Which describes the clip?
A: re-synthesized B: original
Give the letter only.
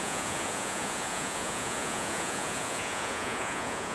A